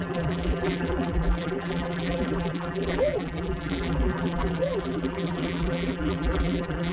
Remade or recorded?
remade